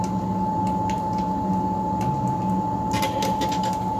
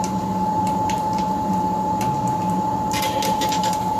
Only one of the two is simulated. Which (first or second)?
second